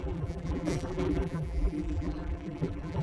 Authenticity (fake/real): fake